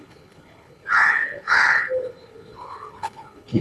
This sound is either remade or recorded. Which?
remade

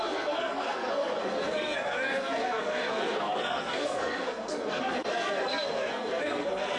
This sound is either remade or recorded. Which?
remade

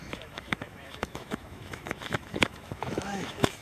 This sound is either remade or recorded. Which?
remade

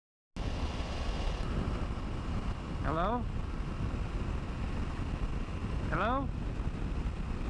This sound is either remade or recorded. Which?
recorded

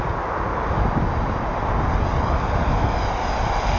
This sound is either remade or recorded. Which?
recorded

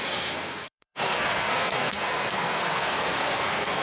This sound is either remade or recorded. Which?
remade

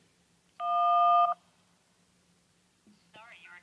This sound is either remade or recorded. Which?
recorded